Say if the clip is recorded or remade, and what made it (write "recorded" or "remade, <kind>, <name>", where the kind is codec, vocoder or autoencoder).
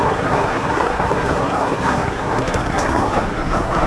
remade, codec, SNAC